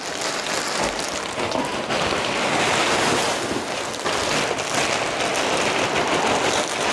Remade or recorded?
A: recorded